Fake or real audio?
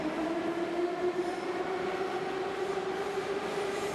real